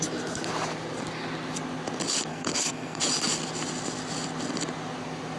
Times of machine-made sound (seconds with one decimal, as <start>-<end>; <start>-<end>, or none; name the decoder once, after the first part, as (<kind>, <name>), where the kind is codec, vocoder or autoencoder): 2.3-3.0 (codec, SNAC)